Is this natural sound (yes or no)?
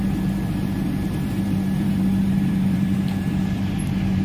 no